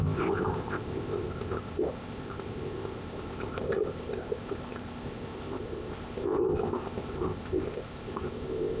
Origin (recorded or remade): remade